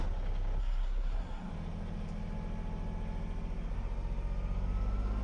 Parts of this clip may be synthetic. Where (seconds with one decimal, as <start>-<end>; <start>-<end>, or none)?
0.6-1.5